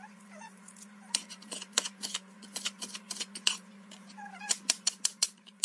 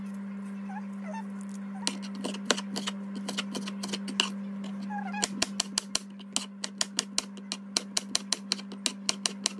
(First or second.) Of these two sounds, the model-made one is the first